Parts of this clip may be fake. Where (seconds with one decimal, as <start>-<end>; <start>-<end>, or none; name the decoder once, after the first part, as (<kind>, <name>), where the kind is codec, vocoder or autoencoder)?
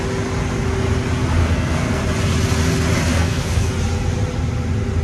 1.4-2.0 (codec, SNAC); 3.1-3.7